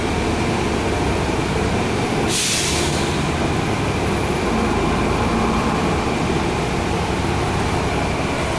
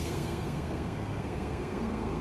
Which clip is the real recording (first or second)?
first